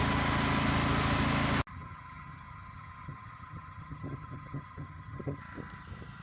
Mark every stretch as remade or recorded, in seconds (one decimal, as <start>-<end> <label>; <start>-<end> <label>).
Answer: 0.0-1.7 recorded; 1.7-5.4 remade; 5.4-6.2 recorded